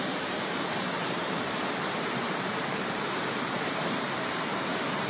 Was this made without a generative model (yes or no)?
no